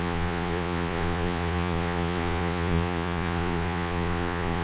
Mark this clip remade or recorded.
remade